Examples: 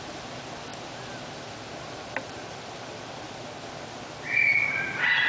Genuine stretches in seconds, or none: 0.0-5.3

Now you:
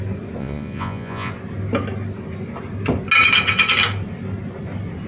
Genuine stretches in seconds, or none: 0.0-0.4; 1.3-5.1

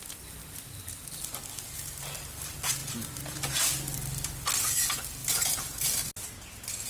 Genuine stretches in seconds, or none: 0.0-5.2; 5.9-6.9